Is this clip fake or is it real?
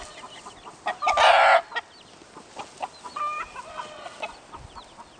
real